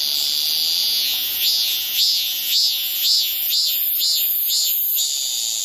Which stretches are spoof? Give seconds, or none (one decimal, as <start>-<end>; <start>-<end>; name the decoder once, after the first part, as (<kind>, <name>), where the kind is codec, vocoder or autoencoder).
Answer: 0.8-3.4 (vocoder, Vocos)